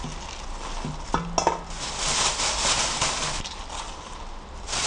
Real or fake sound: real